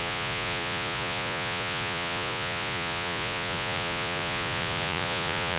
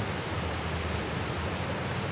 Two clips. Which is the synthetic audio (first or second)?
first